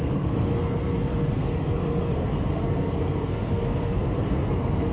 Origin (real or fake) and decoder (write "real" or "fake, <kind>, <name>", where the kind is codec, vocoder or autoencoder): fake, codec, SNAC